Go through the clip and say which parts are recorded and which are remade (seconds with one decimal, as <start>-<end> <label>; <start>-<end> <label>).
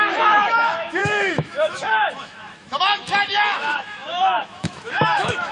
0.0-5.5 remade